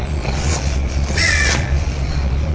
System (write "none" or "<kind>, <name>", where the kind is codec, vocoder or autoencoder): vocoder, Vocos